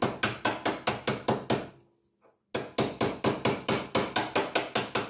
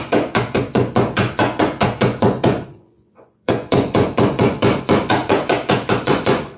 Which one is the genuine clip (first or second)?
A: first